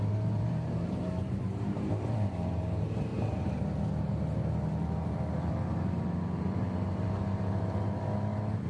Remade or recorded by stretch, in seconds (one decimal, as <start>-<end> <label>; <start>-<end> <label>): 0.0-3.1 remade; 3.1-4.7 recorded; 4.7-8.7 remade

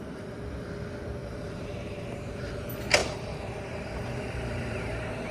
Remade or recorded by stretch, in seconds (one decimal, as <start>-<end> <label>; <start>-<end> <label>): 0.0-1.2 recorded; 1.2-2.5 remade; 2.5-3.0 recorded; 3.0-5.3 remade

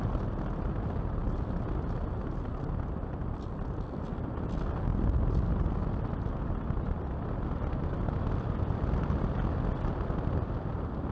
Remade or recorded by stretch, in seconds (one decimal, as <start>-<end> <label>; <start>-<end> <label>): 0.0-11.1 recorded

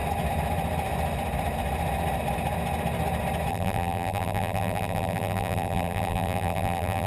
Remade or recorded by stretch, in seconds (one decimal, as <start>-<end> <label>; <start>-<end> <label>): 0.0-3.5 recorded; 3.5-7.1 remade

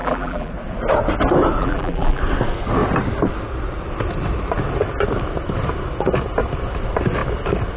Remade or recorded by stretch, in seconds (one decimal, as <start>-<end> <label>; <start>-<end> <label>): 0.0-0.5 remade; 0.5-1.6 recorded; 1.6-2.2 remade; 2.2-7.8 recorded

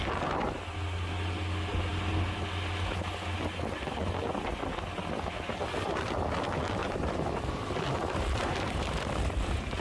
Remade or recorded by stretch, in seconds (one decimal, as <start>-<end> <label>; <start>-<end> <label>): 0.0-6.8 recorded; 6.8-9.8 remade